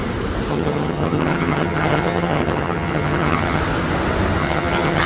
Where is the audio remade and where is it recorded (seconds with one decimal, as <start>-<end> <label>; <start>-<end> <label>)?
0.0-0.5 recorded; 0.5-3.6 remade; 3.6-4.4 recorded; 4.4-5.1 remade